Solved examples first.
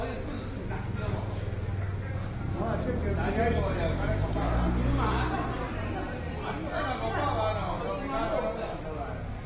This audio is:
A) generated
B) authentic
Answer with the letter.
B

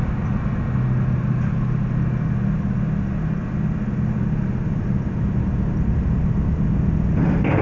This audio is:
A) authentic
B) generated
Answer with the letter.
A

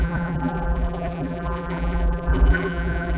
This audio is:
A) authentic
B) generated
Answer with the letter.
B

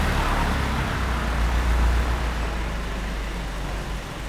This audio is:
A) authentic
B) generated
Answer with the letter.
A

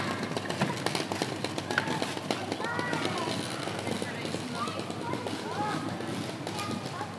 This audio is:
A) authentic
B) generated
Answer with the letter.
A